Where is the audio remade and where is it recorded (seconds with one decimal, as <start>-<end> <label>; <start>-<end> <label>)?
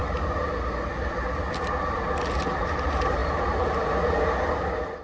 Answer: 0.0-5.0 recorded